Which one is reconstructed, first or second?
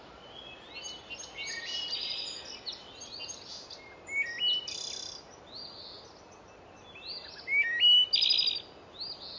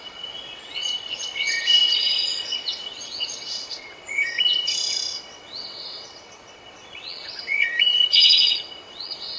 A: second